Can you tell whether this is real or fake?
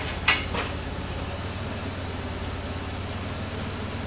real